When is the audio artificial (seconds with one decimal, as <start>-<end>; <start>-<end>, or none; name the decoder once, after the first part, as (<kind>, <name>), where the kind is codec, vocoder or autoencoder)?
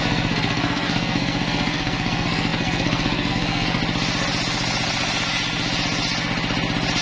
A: 0.0-3.8 (codec, SNAC)